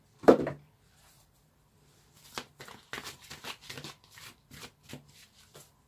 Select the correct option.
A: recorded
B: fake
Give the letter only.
B